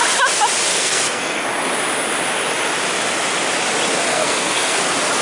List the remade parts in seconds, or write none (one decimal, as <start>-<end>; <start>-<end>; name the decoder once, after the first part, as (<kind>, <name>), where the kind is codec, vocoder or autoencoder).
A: 0.7-1.4 (codec, SNAC); 4.1-4.8